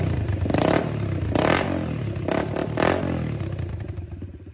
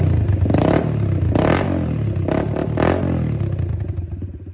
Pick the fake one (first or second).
first